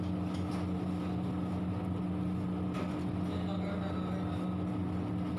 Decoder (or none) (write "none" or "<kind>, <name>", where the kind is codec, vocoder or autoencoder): none